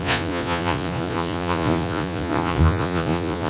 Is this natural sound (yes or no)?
no